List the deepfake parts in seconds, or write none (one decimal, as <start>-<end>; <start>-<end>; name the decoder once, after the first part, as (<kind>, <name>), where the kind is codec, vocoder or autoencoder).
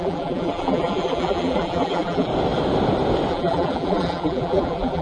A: 0.0-2.3 (vocoder, BigVGAN v2); 3.3-5.0